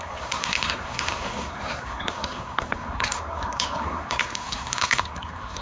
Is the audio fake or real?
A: fake